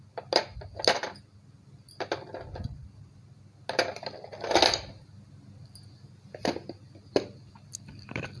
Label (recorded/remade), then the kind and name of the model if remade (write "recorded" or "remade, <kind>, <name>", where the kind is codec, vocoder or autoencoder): recorded